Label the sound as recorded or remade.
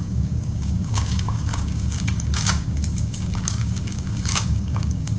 remade